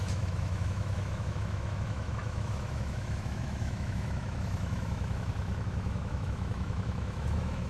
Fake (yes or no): yes